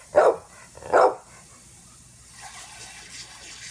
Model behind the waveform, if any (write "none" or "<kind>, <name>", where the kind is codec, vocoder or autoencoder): none